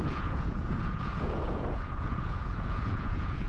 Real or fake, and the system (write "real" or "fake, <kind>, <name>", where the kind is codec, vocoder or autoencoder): fake, vocoder, Vocos